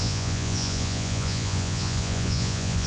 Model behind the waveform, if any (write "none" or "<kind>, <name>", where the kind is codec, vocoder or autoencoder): vocoder, Vocos